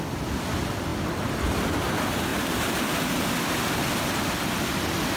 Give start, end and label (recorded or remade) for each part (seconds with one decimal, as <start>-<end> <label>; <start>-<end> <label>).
0.0-2.3 recorded; 2.3-3.1 remade; 3.1-5.2 recorded